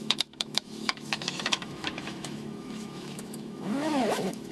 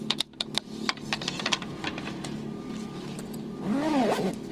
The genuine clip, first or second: second